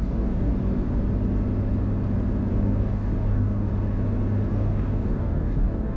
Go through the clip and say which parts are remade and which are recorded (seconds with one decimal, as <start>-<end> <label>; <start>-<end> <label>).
0.0-0.5 remade; 0.5-2.5 recorded; 2.5-3.7 remade; 3.7-4.5 recorded; 4.5-6.0 remade